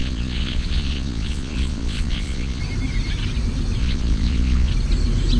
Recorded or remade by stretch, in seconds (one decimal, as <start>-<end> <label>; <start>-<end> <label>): 0.0-2.6 remade; 2.6-3.8 recorded; 3.8-4.7 remade; 4.7-5.4 recorded